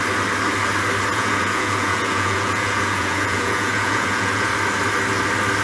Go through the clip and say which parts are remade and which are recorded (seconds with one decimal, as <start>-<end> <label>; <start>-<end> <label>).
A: 0.0-1.1 recorded; 1.1-4.5 remade; 4.5-5.6 recorded